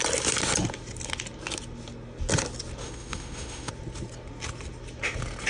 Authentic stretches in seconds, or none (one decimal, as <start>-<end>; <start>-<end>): 0.0-2.8; 3.7-5.5